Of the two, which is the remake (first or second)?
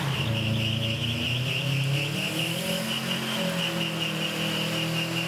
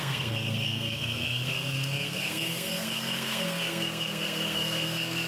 second